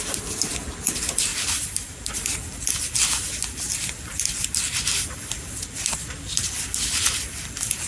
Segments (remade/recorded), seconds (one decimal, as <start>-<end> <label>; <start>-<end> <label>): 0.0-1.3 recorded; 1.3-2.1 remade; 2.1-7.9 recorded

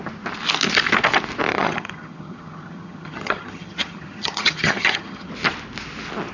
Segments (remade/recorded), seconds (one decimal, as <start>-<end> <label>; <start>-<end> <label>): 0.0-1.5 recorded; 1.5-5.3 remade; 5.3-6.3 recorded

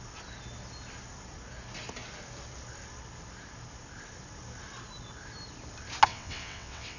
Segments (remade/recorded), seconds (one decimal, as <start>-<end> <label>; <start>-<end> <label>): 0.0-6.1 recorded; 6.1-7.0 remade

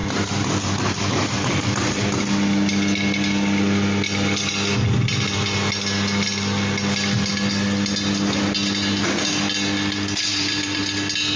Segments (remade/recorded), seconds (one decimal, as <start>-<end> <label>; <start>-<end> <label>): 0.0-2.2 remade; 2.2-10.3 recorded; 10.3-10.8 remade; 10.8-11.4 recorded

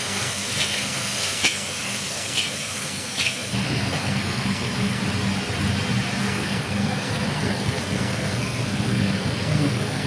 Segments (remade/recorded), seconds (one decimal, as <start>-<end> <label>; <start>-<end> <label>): 0.0-5.0 remade; 5.0-6.2 recorded; 6.2-10.1 remade

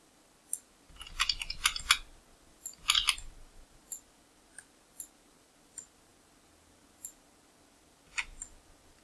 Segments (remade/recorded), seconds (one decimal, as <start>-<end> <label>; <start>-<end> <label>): 0.0-9.0 recorded

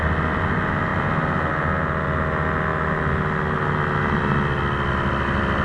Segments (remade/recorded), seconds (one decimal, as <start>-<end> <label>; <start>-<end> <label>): 0.0-5.6 recorded

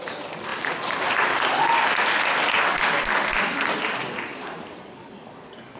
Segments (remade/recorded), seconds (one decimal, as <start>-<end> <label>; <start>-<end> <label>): 0.0-0.5 recorded; 0.5-1.4 remade; 1.4-4.3 recorded; 4.3-5.0 remade; 5.0-5.8 recorded